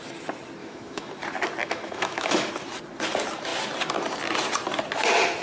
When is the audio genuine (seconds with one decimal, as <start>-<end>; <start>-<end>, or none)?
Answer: 0.0-0.6; 1.1-1.6; 2.5-5.4